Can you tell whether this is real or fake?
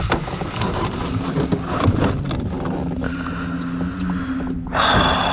real